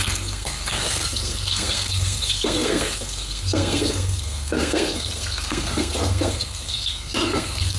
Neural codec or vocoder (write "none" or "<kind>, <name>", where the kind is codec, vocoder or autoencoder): codec, SNAC